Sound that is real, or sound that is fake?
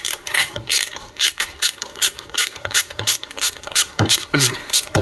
fake